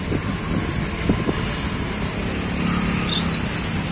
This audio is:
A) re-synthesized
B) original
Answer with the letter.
B